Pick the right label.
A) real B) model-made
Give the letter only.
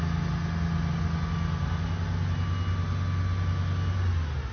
A